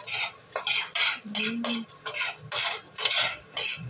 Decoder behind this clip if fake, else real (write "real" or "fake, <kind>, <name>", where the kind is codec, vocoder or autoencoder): real